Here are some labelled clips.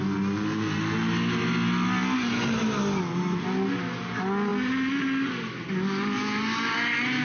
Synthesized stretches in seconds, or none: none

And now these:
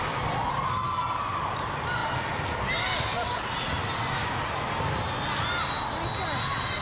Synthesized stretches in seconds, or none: none

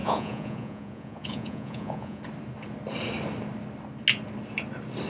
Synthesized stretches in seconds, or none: 0.0-2.2

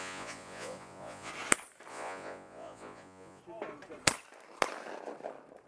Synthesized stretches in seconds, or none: 0.0-1.3; 1.9-3.4

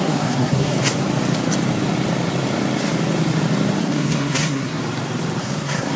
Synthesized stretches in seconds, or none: 0.0-0.7; 3.8-4.8; 5.4-6.0

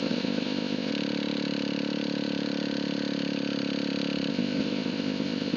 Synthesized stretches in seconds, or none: 0.0-0.9; 4.3-5.6

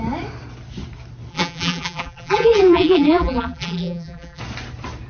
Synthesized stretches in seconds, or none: 1.3-4.4